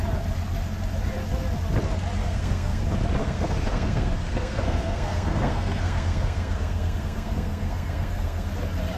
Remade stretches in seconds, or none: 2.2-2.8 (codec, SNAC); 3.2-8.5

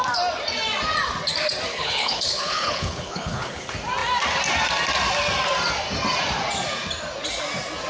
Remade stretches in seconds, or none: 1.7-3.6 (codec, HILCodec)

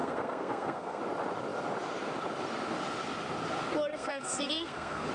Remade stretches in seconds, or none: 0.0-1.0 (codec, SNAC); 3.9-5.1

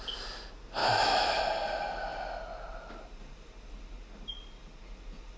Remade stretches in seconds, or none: 0.8-1.4 (autoencoder, DAC-VAE)

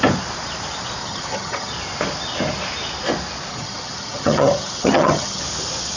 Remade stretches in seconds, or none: 1.0-1.7 (vocoder, HiFi-GAN); 3.5-5.4

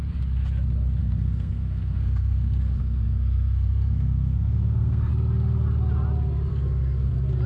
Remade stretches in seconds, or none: 1.0-5.1 (codec, SNAC); 6.5-7.1

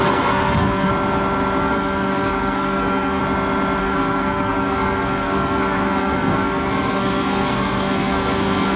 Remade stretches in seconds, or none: 0.0-0.9 (codec, SNAC); 1.6-3.2; 3.8-8.8